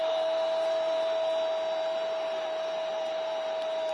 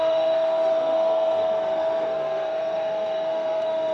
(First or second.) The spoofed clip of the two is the second